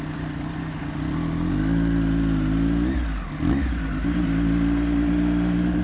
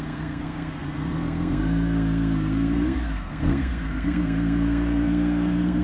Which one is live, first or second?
first